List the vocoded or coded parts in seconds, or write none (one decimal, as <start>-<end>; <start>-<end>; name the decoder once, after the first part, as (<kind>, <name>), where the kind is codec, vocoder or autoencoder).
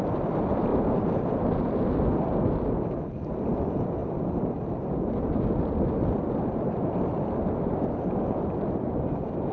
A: 0.0-0.7 (vocoder, BigVGAN v2); 2.5-9.5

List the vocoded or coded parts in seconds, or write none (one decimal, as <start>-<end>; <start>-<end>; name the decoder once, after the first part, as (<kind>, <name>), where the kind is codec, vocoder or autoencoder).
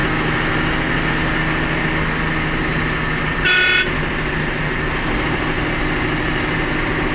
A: none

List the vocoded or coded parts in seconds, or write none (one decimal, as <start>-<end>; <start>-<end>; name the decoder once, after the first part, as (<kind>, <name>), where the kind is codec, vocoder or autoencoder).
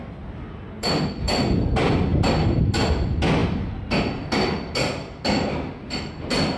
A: none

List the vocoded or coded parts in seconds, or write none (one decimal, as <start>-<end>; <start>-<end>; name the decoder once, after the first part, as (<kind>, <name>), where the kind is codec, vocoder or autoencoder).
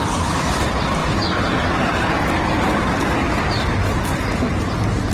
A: none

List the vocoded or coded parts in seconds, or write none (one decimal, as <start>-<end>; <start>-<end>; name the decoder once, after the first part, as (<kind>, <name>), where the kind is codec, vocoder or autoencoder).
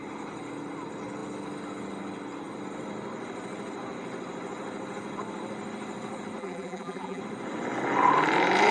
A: 6.4-7.2 (vocoder, BigVGAN v2)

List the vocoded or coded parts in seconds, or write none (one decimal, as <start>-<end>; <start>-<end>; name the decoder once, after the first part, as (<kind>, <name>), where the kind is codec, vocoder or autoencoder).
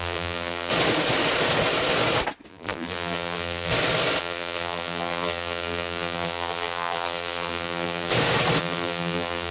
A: 0.0-0.7 (vocoder, BigVGAN v2); 2.5-3.7; 4.2-8.1; 8.6-9.5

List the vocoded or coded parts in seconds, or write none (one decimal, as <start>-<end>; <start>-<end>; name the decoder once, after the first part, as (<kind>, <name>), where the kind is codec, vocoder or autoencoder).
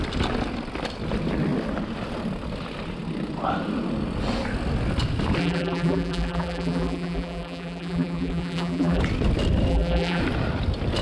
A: 5.4-9.0 (vocoder, BigVGAN v2); 9.7-10.2